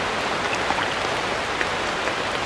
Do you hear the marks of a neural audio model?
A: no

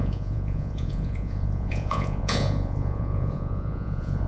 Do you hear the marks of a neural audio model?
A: yes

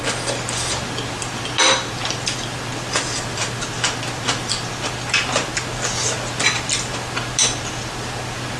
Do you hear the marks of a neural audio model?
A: no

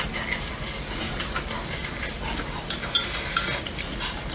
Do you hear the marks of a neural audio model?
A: no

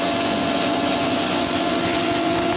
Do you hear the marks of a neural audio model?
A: yes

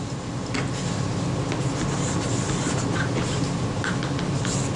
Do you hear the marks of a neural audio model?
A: no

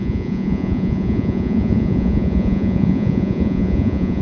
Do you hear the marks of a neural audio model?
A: yes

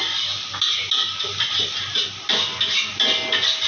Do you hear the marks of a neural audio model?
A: no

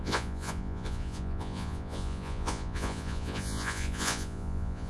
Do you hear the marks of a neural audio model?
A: yes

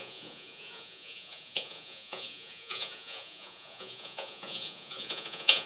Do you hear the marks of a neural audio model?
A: yes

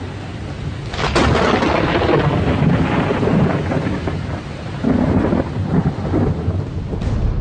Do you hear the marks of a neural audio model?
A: no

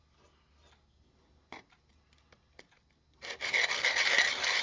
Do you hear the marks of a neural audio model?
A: no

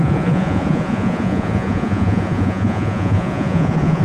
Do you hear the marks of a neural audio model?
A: yes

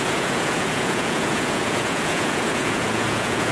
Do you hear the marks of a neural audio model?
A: yes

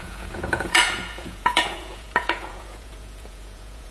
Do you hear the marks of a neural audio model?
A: yes